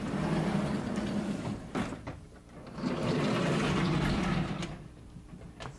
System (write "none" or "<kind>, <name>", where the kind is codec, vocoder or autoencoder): none